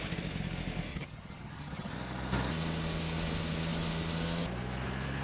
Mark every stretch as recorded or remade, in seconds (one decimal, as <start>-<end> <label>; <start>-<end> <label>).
0.0-0.9 recorded; 0.9-1.9 remade; 1.9-5.2 recorded